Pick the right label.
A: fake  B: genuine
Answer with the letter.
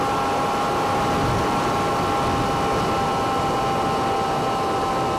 B